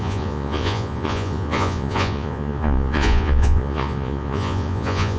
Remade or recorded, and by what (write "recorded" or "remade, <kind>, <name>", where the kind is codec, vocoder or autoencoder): remade, vocoder, Vocos